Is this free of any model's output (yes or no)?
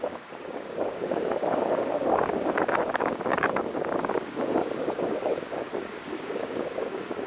no